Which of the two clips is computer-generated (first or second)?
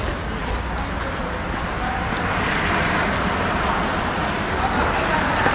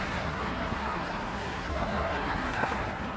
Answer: second